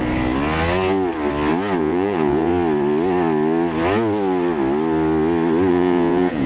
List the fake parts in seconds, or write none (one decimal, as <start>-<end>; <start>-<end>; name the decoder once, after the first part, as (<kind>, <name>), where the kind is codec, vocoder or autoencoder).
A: 1.8-2.5 (vocoder, Vocos); 5.7-6.5

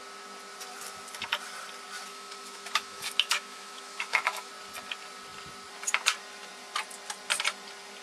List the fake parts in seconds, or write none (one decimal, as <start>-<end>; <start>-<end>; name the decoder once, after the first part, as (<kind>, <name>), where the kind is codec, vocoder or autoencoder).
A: 2.1-4.5 (autoencoder, DAC-VAE)